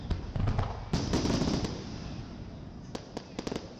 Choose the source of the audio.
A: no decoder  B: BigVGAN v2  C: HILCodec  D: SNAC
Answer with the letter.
A